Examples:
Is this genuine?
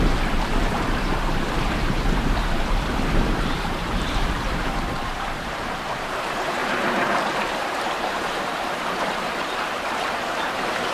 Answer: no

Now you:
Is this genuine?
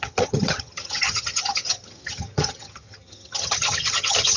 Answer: no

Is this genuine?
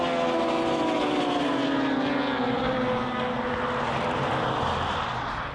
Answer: yes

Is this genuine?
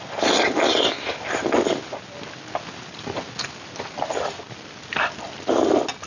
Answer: yes